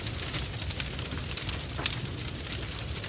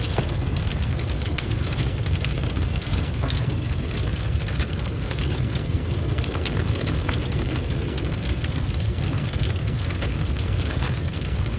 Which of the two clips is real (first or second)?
first